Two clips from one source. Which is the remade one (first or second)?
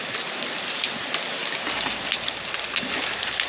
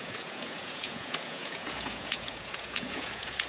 second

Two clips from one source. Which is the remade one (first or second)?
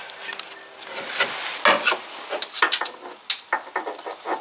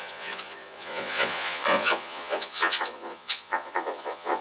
second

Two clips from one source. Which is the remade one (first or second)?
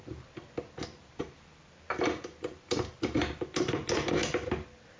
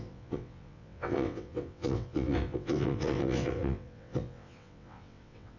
second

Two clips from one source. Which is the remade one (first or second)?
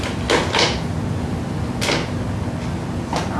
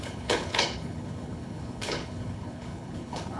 second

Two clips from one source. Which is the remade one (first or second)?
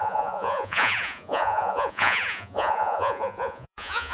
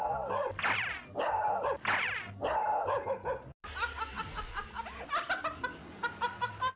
first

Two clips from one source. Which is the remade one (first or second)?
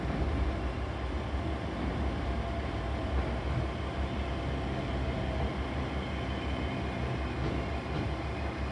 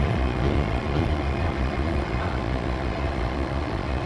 second